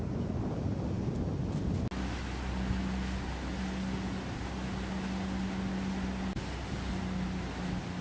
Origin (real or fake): real